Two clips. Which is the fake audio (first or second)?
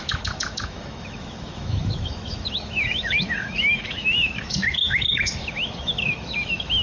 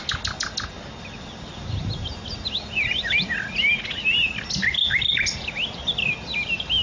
first